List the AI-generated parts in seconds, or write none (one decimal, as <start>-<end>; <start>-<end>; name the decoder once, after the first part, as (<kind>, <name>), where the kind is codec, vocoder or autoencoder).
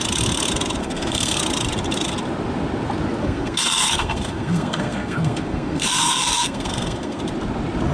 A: 0.8-1.4 (codec, SNAC); 3.2-7.2